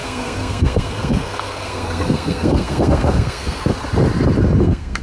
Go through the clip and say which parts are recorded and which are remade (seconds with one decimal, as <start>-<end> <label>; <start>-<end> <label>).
0.0-3.7 remade; 3.7-4.6 recorded; 4.6-5.0 remade